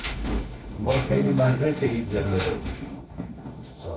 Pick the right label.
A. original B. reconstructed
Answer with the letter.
B